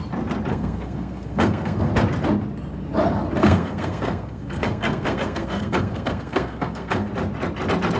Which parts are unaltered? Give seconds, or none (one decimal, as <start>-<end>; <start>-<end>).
0.0-0.5; 1.9-3.4; 7.1-8.0